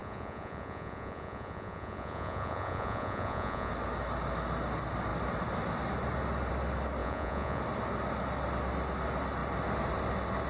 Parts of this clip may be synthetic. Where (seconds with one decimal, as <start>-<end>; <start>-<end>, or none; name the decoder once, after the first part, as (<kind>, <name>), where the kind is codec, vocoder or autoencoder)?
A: 0.0-3.7 (vocoder, Vocos); 7.0-7.6